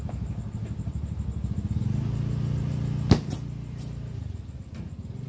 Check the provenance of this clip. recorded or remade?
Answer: recorded